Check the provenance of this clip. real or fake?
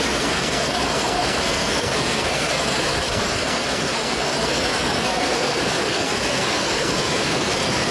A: fake